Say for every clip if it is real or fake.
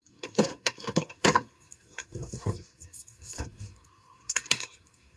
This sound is fake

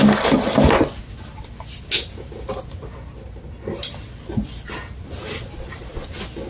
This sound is real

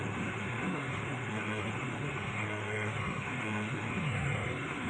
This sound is fake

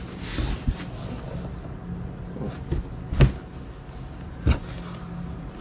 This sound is real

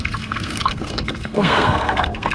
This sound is fake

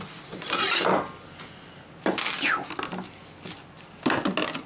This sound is real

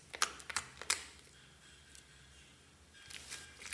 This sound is real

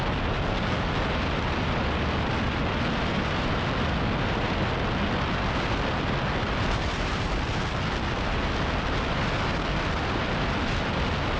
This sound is real